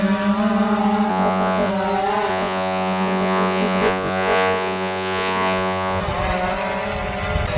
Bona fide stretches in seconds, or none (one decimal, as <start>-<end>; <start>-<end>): 0.0-1.1; 1.7-2.3; 6.0-7.6